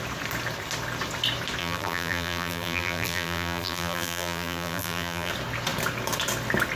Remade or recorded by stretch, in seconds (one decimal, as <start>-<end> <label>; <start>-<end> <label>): 0.0-1.6 recorded; 1.6-5.3 remade; 5.3-6.8 recorded